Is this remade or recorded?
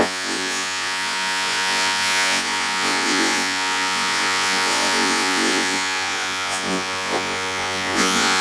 remade